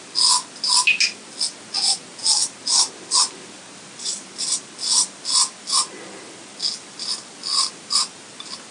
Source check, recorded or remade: recorded